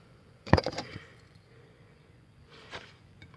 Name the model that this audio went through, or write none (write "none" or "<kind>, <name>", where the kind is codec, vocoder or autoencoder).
vocoder, Vocos